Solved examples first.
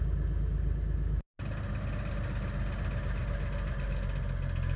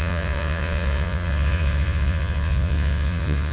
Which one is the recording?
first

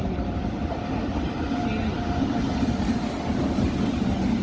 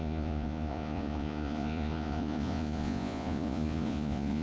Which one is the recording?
first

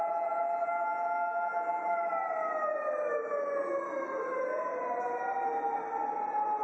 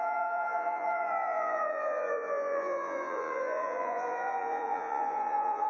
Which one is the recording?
first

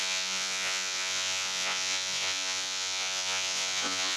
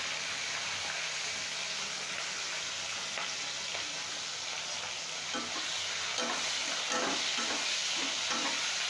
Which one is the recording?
second